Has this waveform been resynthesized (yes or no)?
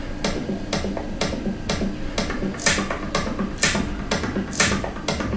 no